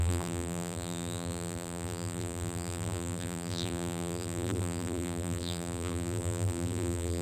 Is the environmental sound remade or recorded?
remade